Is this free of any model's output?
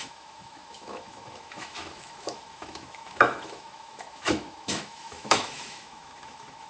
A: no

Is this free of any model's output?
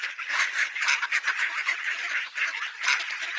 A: no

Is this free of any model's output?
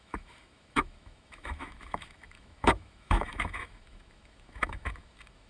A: no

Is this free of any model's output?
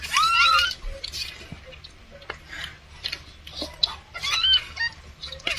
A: yes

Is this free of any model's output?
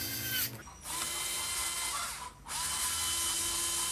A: yes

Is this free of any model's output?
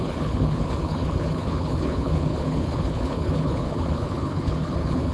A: no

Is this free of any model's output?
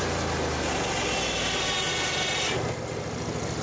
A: yes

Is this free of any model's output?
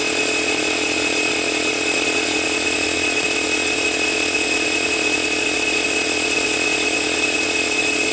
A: no